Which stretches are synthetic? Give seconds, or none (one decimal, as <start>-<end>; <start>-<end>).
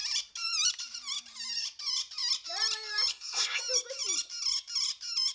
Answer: 3.1-3.6